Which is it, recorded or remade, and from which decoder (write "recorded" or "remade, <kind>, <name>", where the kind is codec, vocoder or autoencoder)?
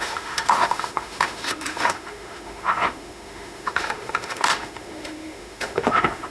remade, autoencoder, DAC-VAE